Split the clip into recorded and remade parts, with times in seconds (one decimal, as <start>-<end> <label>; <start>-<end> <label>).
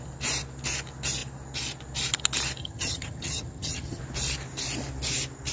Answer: 0.0-2.6 recorded; 2.6-4.0 remade; 4.0-5.5 recorded